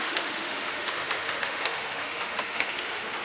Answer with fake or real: fake